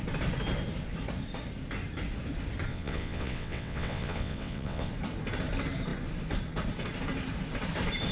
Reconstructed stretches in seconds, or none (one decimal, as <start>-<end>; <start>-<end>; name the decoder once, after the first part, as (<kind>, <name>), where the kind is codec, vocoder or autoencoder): 2.7-4.9 (vocoder, WaveNeXt)